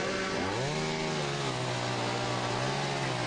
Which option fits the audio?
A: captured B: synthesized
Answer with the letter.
A